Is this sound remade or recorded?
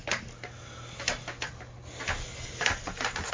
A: recorded